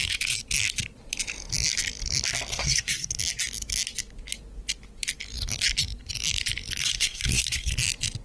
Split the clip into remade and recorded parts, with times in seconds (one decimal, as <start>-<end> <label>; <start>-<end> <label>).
0.0-2.5 recorded; 2.5-3.2 remade; 3.2-6.8 recorded; 6.8-7.7 remade; 7.7-8.2 recorded